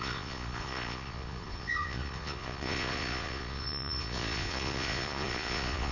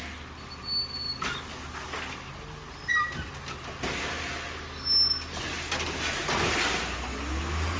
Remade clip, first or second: first